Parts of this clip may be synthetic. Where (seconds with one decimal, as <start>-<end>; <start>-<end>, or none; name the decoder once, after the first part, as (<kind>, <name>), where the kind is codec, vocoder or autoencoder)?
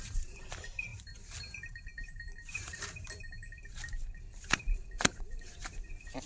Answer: 0.0-6.3 (vocoder, BigVGAN v2)